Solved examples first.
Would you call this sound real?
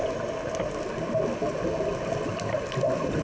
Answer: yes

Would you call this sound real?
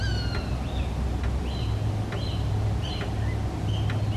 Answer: yes